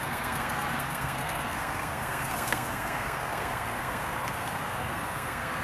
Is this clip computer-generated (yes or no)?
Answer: yes